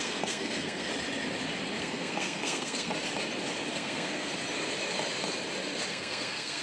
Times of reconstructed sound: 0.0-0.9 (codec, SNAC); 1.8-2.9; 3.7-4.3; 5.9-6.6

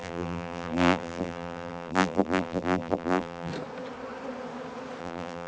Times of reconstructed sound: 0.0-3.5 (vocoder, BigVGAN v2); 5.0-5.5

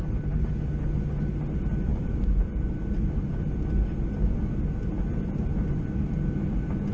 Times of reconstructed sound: 1.9-2.7 (vocoder, BigVGAN v2); 5.1-5.7

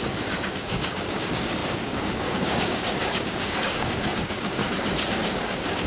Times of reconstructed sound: 0.0-4.6 (codec, DAC); 5.1-5.9